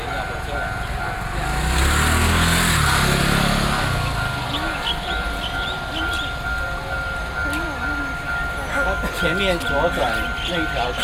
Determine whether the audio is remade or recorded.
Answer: recorded